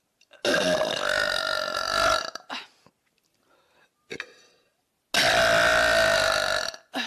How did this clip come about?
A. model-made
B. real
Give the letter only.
B